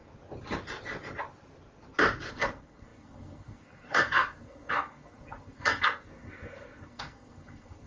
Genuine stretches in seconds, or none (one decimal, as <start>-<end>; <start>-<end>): 0.0-2.3